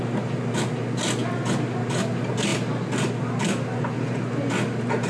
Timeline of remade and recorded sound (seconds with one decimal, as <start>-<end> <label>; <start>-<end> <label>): 0.0-5.1 recorded